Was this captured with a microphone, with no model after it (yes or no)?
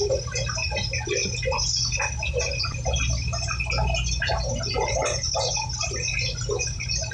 yes